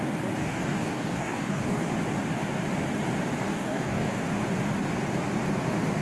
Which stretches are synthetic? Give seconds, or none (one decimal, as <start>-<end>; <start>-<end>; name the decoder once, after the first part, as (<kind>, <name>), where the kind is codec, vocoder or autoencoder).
0.4-1.9 (codec, DAC); 3.4-4.2